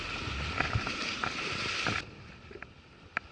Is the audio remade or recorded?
recorded